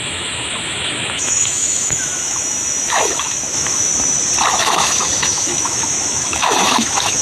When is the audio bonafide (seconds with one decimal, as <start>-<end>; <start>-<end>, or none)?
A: 3.9-4.6